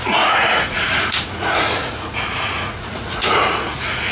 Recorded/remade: remade